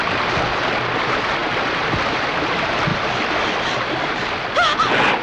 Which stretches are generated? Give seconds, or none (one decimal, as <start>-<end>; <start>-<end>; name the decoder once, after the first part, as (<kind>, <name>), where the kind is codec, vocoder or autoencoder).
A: 1.4-2.3 (vocoder, BigVGAN v2); 2.9-3.7